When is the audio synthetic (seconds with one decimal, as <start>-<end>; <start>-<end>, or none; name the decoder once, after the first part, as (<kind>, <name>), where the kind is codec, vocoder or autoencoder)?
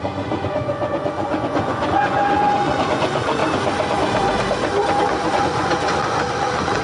0.0-3.4 (vocoder, Vocos); 5.3-6.8